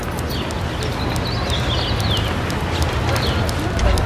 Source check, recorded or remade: recorded